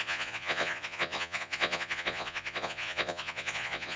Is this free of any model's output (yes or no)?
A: no